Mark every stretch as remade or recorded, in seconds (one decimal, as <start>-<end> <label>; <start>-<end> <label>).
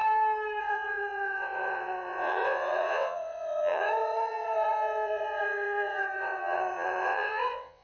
0.0-0.6 recorded; 0.6-7.8 remade